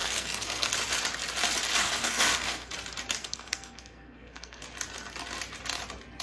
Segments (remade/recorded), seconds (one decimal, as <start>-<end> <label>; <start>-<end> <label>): 0.0-0.7 remade; 0.7-1.8 recorded; 1.8-2.7 remade; 2.7-3.2 recorded; 3.2-4.6 remade; 4.6-6.2 recorded